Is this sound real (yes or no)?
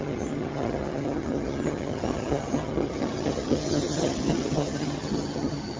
no